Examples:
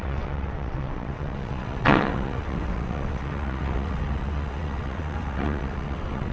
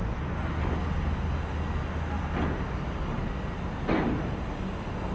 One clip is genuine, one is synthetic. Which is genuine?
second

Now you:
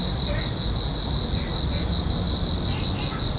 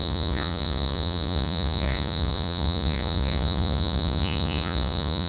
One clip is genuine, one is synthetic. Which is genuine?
first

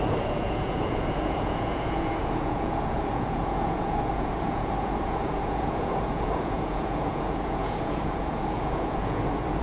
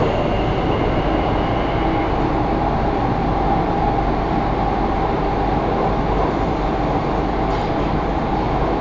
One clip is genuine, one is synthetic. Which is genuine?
second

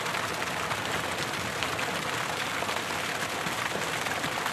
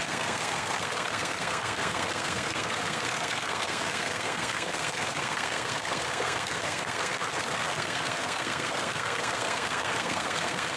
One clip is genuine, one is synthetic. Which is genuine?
first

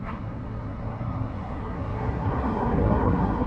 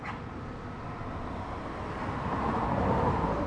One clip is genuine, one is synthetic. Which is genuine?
second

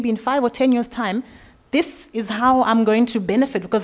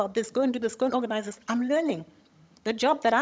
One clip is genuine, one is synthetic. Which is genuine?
first